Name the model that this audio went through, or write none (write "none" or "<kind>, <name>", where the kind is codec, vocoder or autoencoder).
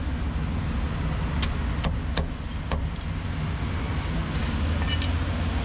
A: none